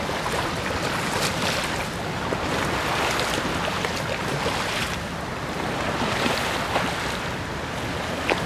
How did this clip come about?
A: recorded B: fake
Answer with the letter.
A